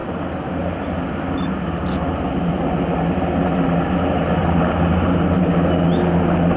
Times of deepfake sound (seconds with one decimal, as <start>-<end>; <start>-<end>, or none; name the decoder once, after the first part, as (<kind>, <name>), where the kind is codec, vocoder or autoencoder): none